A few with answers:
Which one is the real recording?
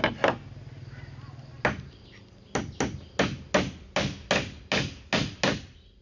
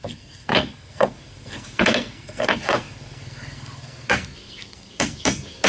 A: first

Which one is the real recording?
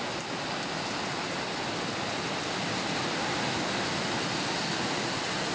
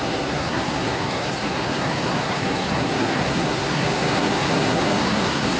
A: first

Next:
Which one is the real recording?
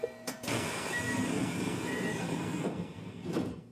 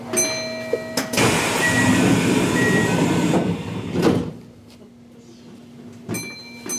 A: second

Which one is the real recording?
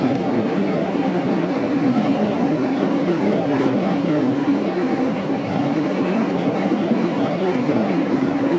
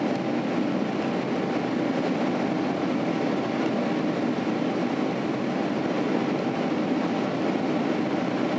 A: second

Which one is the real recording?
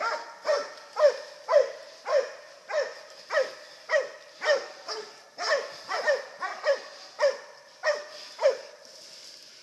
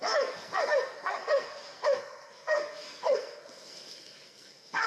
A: first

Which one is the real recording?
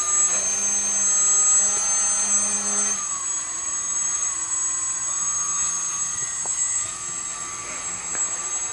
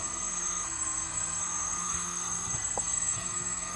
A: first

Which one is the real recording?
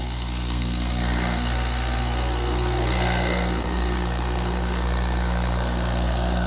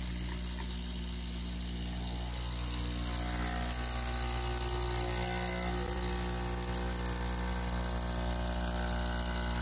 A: second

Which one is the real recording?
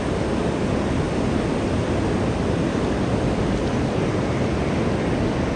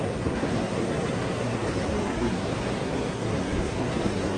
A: first